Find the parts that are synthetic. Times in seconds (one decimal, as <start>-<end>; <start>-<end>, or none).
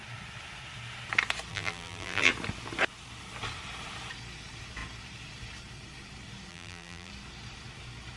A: 1.5-2.3; 6.5-7.1